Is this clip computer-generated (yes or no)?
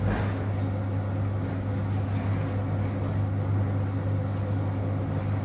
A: no